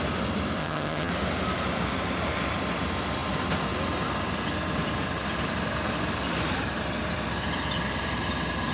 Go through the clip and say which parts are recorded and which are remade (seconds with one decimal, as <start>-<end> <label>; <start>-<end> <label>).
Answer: 0.0-0.6 recorded; 0.6-1.1 remade; 1.1-8.7 recorded